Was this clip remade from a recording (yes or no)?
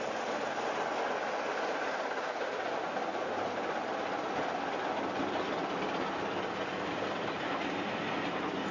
no